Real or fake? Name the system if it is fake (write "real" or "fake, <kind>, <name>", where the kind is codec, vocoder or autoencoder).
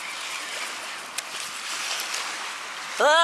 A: real